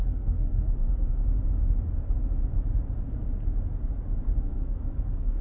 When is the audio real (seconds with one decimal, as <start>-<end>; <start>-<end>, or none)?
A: 1.2-4.4